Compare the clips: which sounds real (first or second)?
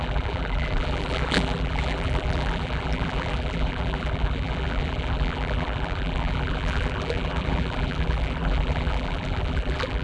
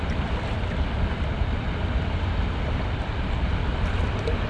second